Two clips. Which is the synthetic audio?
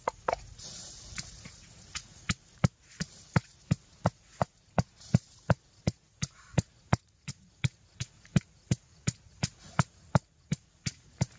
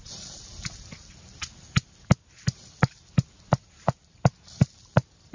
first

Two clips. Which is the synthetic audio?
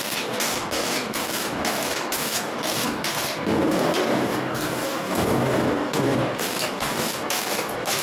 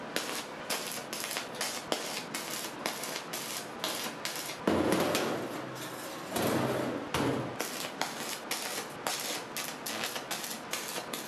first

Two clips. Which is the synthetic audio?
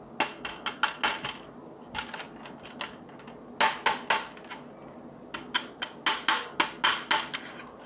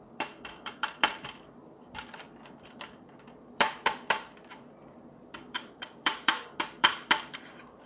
second